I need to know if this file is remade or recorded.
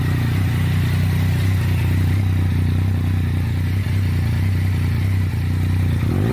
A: recorded